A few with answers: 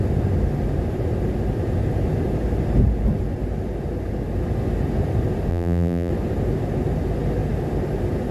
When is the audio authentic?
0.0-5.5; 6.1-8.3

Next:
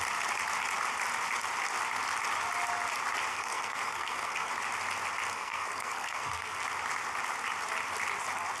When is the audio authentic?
0.0-3.3; 4.5-5.3; 6.6-8.6

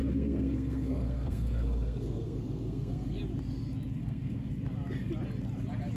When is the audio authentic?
3.2-4.0; 4.5-6.0

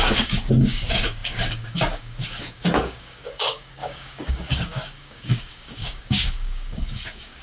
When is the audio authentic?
none

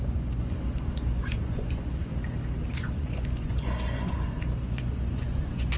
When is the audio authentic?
2.1-2.7

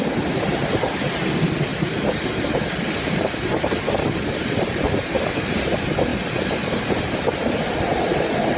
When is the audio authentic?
0.0-8.6

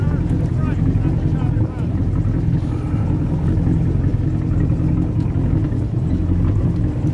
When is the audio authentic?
0.0-7.1